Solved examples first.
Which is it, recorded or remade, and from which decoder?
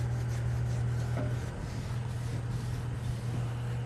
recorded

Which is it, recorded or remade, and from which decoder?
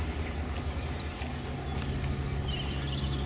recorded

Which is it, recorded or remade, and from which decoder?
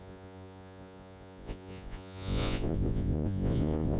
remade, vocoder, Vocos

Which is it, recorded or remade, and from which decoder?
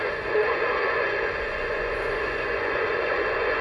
remade, vocoder, Vocos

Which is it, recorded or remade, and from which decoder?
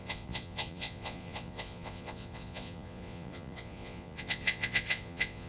remade, vocoder, Vocos